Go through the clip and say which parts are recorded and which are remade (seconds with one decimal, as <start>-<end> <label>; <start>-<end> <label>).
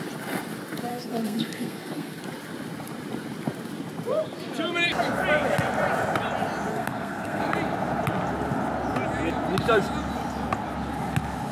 0.0-0.9 recorded; 0.9-2.2 remade; 2.2-6.7 recorded; 6.7-7.4 remade; 7.4-11.5 recorded